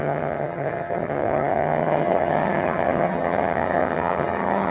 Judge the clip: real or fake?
fake